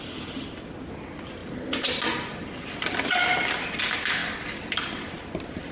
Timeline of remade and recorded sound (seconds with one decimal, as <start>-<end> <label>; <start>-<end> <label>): 0.0-5.7 recorded